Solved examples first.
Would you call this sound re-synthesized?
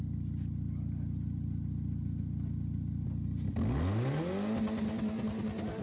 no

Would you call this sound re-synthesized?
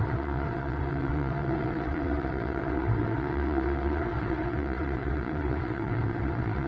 yes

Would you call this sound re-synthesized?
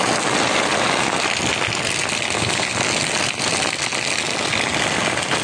no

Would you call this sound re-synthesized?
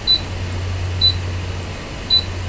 no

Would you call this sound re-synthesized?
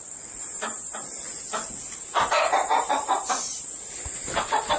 no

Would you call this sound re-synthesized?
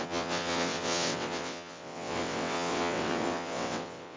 yes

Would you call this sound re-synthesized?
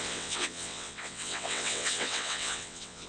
yes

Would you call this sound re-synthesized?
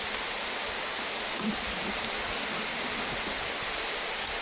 no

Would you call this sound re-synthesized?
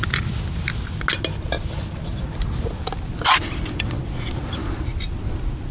no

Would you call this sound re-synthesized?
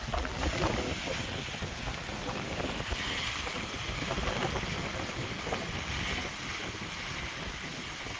no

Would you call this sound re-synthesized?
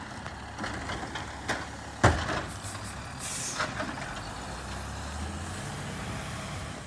no